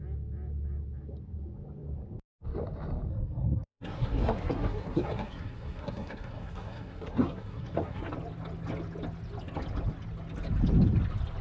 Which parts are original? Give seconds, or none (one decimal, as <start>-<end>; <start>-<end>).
0.0-3.1; 8.1-11.4